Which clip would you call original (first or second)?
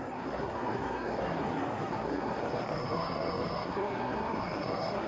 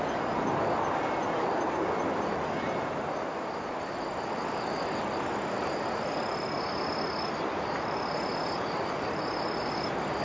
second